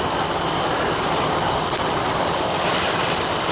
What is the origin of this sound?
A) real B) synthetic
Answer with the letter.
A